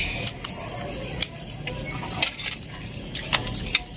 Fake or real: real